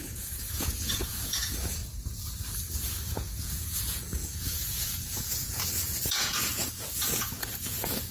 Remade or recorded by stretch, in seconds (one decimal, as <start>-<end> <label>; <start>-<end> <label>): 0.0-1.8 remade; 1.8-3.0 recorded; 3.0-8.1 remade